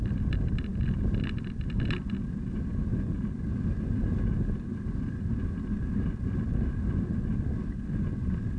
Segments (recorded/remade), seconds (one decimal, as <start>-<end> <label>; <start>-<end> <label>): 0.0-8.6 recorded